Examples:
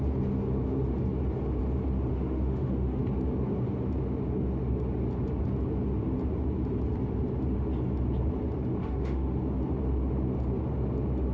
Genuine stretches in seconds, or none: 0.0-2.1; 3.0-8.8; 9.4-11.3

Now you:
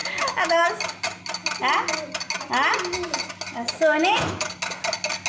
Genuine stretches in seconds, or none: 0.7-3.5; 4.5-5.3